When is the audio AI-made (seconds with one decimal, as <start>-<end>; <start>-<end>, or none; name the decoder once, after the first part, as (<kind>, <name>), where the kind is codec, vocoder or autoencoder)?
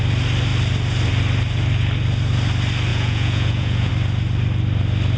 2.9-3.9 (vocoder, Vocos)